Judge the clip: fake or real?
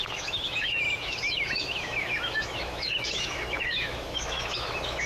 fake